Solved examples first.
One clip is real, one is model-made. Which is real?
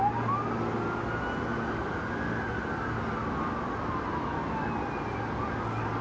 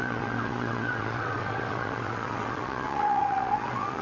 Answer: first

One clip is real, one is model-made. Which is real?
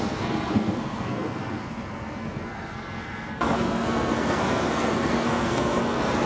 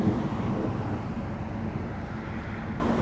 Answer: second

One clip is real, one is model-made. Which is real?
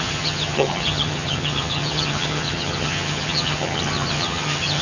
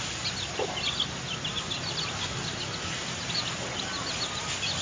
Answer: second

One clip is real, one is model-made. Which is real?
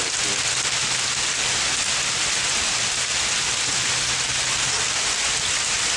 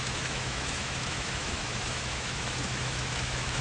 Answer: first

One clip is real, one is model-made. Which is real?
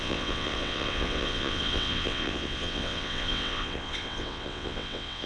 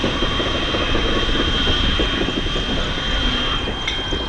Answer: second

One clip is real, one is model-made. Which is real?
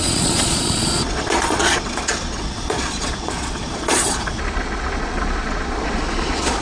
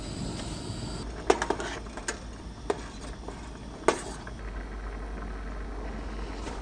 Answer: second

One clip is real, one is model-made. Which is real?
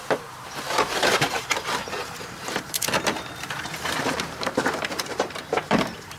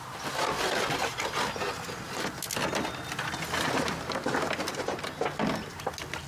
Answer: second